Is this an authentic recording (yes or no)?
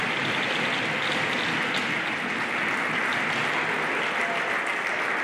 yes